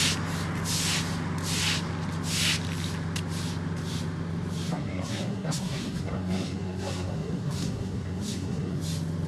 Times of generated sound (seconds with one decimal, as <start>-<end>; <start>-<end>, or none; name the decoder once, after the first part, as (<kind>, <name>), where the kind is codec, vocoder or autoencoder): 4.7-8.8 (codec, SNAC)